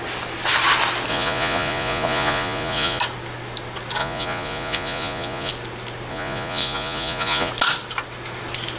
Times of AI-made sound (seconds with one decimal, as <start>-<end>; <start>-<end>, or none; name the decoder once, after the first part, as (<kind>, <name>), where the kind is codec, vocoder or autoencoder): 1.1-3.0 (vocoder, Vocos); 4.0-5.5; 6.1-7.5